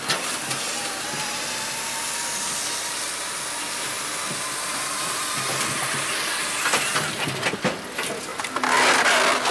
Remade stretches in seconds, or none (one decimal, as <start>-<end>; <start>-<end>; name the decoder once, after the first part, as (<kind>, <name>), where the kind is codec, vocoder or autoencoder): none